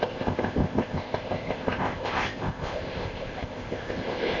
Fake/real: fake